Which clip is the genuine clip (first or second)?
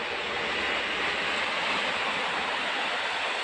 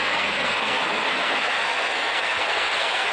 first